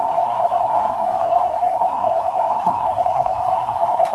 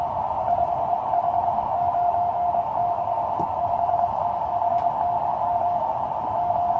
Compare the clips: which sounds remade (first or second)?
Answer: first